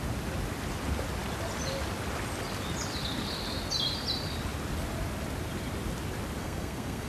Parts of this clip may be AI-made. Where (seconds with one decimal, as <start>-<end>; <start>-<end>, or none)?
6.4-7.1

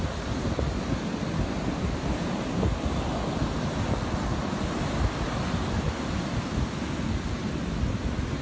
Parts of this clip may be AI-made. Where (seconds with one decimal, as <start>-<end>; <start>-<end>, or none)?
none